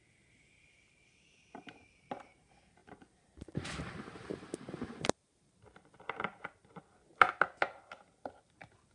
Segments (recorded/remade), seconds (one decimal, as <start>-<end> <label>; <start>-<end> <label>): 0.0-2.8 recorded; 2.8-6.8 remade; 6.8-8.9 recorded